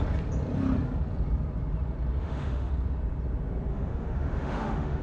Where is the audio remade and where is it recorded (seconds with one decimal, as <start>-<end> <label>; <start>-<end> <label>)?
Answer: 0.0-2.2 recorded; 2.2-2.7 remade; 2.7-3.7 recorded; 3.7-5.0 remade